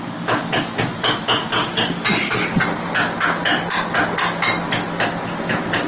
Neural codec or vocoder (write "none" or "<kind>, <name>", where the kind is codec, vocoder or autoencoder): none